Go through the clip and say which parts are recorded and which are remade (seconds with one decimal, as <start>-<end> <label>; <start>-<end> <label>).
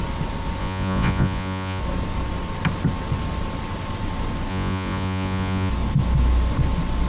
0.0-0.6 recorded; 0.6-1.8 remade; 1.8-4.5 recorded; 4.5-5.7 remade; 5.7-7.1 recorded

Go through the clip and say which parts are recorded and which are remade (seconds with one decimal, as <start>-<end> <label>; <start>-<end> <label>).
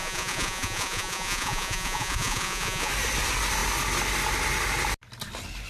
0.0-2.9 remade; 2.9-5.7 recorded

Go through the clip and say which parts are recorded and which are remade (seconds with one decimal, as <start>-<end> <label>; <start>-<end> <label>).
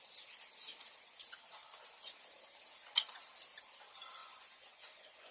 0.0-4.2 recorded; 4.2-5.3 remade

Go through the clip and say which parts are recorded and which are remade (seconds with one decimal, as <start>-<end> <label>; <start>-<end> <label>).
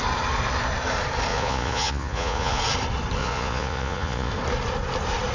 0.0-1.3 recorded; 1.3-2.6 remade; 2.6-3.2 recorded; 3.2-4.3 remade; 4.3-5.3 recorded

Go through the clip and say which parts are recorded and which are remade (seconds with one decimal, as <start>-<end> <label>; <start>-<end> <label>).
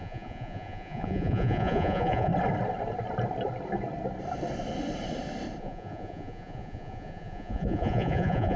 0.0-2.3 remade; 2.3-5.6 recorded; 5.6-8.6 remade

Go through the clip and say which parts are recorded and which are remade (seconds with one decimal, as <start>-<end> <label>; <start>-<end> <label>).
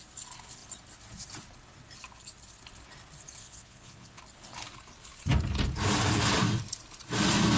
0.0-3.4 recorded; 3.4-4.2 remade; 4.2-7.6 recorded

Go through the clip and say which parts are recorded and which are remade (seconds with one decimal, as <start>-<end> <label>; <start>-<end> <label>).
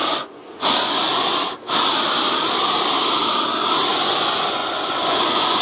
0.0-1.3 remade; 1.3-3.9 recorded; 3.9-5.6 remade